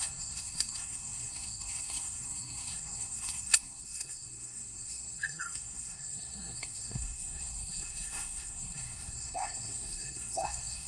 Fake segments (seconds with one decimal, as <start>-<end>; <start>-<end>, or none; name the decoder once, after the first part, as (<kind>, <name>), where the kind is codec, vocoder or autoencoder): 0.0-10.9 (codec, SNAC)